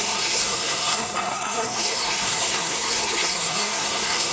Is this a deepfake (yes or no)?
yes